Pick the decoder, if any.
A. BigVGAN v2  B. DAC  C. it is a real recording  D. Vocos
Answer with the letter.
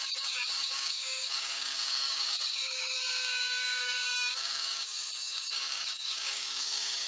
B